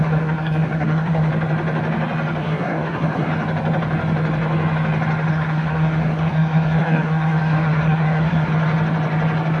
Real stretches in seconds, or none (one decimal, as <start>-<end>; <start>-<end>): 1.3-2.4; 3.3-5.3; 8.5-9.6